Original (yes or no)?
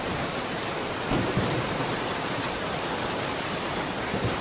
yes